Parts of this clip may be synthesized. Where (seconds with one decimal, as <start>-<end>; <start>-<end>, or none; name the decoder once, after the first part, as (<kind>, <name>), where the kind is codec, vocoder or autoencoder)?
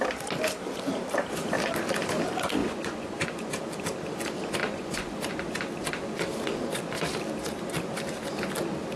2.6-3.5 (vocoder, Vocos); 4.6-5.3